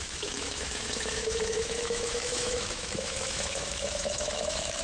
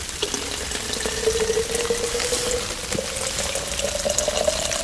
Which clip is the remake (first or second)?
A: first